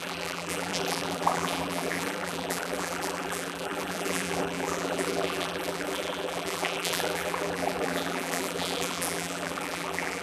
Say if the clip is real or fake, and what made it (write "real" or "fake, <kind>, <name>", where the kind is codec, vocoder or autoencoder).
fake, vocoder, BigVGAN v2